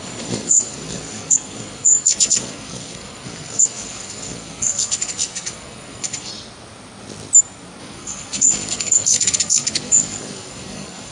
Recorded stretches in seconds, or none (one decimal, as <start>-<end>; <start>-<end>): 6.3-7.8